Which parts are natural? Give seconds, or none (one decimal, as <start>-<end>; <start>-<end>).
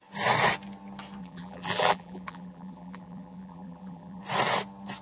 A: 0.0-1.2; 4.2-5.0